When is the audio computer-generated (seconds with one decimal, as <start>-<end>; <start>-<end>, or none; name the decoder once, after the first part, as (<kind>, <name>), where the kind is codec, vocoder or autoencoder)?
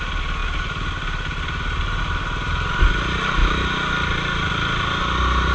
none